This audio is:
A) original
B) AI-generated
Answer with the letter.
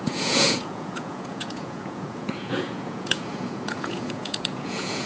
B